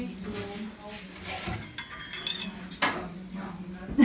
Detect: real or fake real